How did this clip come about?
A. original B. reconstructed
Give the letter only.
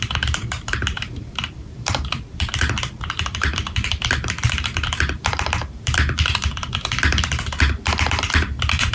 B